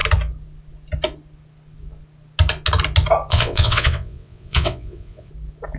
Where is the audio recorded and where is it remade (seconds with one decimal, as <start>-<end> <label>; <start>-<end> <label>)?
0.0-3.3 recorded; 3.3-5.3 remade; 5.3-5.8 recorded